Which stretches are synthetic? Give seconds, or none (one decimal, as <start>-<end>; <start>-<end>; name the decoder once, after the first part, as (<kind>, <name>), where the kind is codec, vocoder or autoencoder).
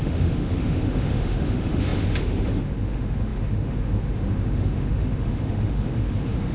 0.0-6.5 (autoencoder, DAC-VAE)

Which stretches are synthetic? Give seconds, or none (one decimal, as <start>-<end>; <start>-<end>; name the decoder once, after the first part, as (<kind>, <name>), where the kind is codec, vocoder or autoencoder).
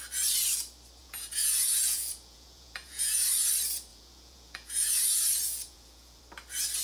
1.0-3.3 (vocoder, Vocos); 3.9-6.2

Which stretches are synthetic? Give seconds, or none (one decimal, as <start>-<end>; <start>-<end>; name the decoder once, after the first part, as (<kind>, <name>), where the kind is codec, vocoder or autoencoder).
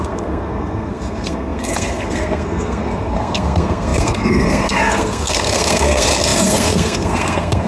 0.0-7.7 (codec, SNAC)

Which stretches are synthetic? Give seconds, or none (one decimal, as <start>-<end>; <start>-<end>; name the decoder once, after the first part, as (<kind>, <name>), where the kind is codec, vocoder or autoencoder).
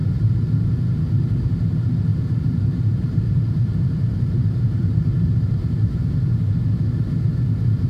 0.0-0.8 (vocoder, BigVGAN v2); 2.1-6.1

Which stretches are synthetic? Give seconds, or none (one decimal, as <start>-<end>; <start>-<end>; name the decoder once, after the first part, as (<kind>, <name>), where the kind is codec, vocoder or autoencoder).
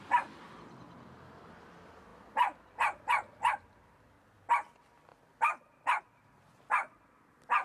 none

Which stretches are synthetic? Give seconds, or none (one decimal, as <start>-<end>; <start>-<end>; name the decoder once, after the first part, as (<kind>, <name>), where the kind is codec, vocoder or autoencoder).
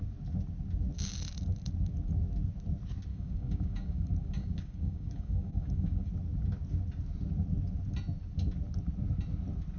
3.1-6.1 (codec, DAC)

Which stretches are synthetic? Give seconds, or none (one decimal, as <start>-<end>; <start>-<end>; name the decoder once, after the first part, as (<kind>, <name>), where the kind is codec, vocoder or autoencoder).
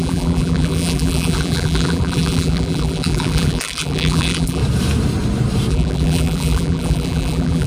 0.0-4.6 (vocoder, BigVGAN v2); 5.7-7.7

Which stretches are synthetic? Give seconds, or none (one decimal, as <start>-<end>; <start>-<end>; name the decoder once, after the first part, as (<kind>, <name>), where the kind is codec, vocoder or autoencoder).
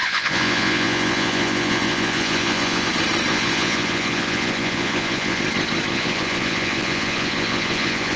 0.0-2.9 (vocoder, Vocos); 3.3-5.4; 5.9-8.2